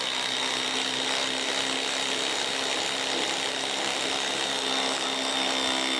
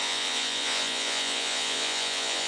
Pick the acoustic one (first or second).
first